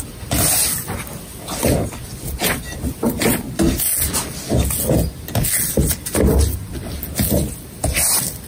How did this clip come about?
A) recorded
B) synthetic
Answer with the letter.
A